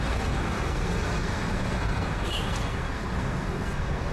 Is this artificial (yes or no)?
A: yes